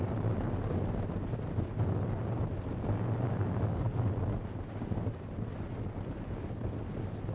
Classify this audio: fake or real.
real